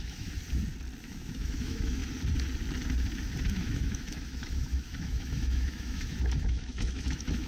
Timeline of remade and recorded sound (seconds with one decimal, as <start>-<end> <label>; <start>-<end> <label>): 0.0-0.4 remade; 0.4-1.0 recorded; 1.0-2.0 remade; 2.0-3.5 recorded; 3.5-7.5 remade